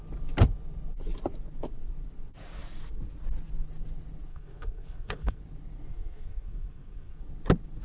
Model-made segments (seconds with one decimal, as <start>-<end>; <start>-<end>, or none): 4.3-5.4; 5.9-7.2